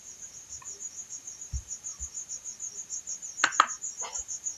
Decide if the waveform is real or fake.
fake